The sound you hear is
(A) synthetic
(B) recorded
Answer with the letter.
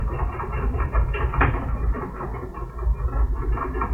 B